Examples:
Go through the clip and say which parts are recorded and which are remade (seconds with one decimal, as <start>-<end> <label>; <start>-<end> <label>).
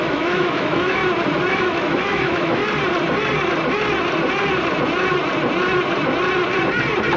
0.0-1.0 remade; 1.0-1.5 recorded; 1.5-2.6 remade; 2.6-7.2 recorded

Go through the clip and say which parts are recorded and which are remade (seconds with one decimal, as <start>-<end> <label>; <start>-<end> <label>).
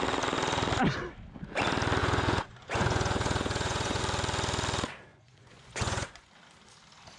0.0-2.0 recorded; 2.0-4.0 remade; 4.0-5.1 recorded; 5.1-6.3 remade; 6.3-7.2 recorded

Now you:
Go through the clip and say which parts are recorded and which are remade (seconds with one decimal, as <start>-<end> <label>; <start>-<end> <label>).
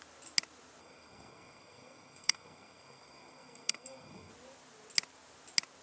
0.0-0.8 recorded; 0.8-4.3 remade; 4.3-5.8 recorded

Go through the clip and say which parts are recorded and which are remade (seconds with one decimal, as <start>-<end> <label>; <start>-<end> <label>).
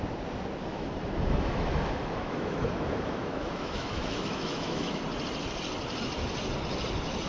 0.0-0.6 recorded; 0.6-5.0 remade; 5.0-7.3 recorded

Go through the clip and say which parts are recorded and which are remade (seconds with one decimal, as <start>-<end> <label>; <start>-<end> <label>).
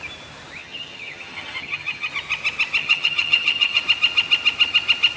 0.0-0.6 recorded; 0.6-2.1 remade; 2.1-2.8 recorded; 2.8-3.8 remade; 3.8-5.2 recorded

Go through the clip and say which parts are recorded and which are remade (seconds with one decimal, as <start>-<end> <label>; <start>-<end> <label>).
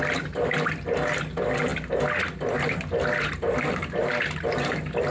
0.0-5.1 recorded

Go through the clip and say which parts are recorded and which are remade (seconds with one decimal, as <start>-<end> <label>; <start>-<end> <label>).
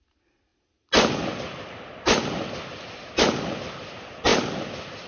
0.0-4.3 recorded; 4.3-5.1 remade